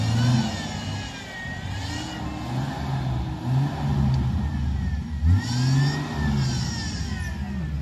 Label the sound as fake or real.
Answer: real